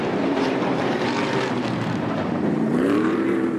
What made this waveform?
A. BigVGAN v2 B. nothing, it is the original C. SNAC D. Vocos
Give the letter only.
A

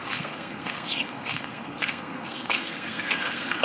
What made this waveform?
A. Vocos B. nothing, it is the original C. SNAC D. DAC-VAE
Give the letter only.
C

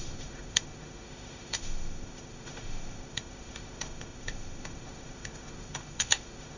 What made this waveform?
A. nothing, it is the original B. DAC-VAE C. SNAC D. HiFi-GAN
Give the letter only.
B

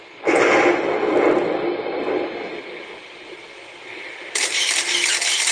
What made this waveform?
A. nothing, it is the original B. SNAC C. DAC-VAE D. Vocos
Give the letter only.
A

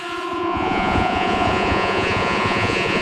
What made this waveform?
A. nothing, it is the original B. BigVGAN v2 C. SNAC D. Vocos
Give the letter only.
D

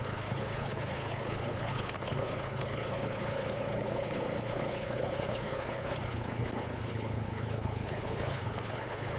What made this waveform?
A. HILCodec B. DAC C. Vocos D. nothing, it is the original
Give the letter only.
A